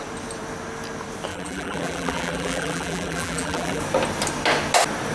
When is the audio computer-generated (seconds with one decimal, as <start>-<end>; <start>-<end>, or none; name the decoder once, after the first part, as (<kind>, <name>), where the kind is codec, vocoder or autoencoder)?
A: 1.3-3.8 (vocoder, BigVGAN v2)